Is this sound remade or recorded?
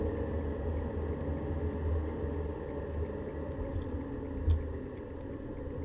recorded